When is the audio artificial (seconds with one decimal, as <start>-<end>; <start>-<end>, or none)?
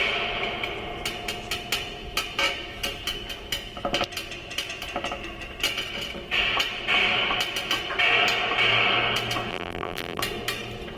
9.5-10.2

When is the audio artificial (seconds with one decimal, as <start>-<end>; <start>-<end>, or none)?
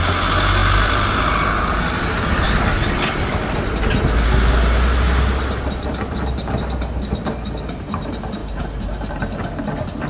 8.4-9.1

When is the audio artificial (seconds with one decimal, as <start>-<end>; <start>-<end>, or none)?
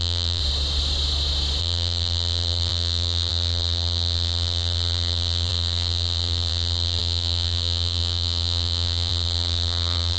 0.0-0.4; 1.6-10.2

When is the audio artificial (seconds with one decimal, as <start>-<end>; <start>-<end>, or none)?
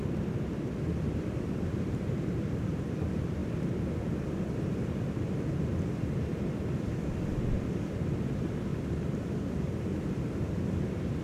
0.0-3.4; 4.9-8.7; 9.2-9.9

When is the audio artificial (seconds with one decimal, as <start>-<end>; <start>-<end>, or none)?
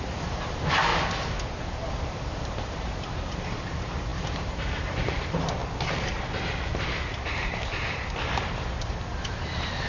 0.0-0.9; 1.9-5.6; 7.1-9.9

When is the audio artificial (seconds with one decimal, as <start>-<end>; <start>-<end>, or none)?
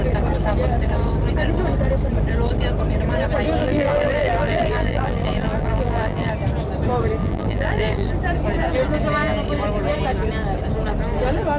3.6-6.3; 7.2-8.1